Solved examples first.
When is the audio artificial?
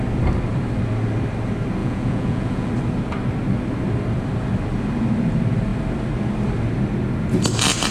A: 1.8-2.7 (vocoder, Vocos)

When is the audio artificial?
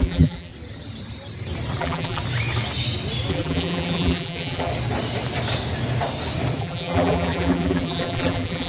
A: 0.0-0.5 (vocoder, BigVGAN v2); 1.8-2.2; 3.3-4.7; 6.6-8.7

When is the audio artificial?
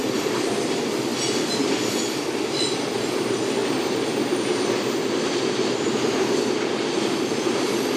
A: 0.0-1.1 (vocoder, BigVGAN v2); 1.9-8.0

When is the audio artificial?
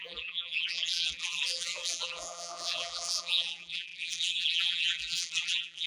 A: 0.0-5.9 (vocoder, BigVGAN v2)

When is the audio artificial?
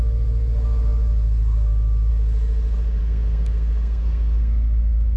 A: 3.0-5.2 (codec, SNAC)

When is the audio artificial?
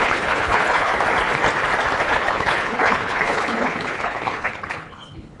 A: 0.0-0.9 (codec, HILCodec); 2.1-5.4